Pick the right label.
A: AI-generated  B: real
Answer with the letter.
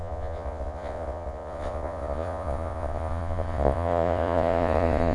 A